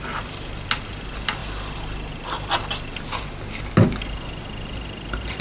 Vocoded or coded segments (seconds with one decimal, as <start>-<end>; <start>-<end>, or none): none